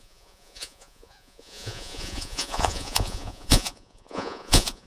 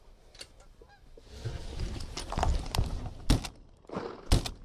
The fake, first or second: first